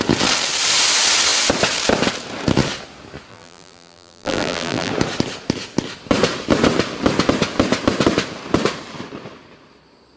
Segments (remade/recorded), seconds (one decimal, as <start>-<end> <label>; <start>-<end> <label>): 0.0-3.3 recorded; 3.3-4.9 remade; 4.9-10.2 recorded